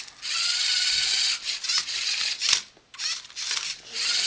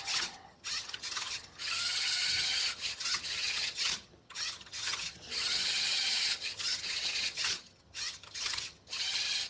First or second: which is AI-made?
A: second